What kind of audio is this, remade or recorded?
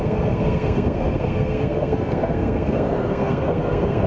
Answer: remade